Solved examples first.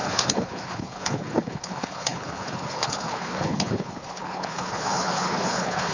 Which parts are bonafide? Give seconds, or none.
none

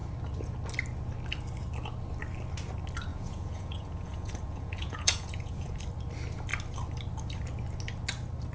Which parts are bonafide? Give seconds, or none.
0.0-3.1; 5.8-8.5

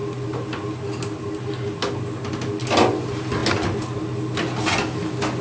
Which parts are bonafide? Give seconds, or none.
0.0-5.4

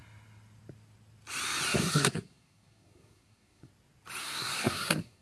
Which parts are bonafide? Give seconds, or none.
0.0-1.8; 3.7-4.2

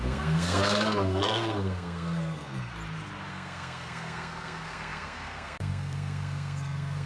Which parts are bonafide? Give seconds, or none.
2.7-3.3

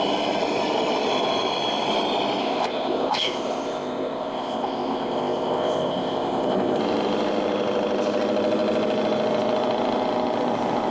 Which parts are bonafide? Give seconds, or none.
0.0-2.4; 6.8-10.9

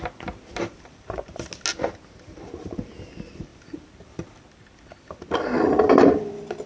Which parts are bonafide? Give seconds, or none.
0.0-6.7

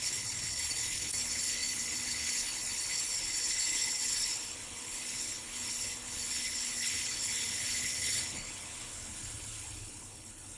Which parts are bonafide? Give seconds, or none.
none